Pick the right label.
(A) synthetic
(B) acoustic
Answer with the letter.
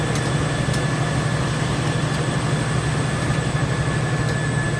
B